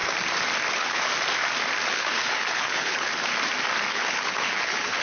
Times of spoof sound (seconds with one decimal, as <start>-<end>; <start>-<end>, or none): 0.7-1.1; 1.9-3.1; 3.9-5.0